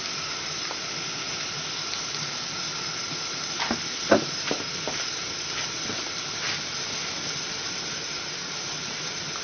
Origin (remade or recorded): recorded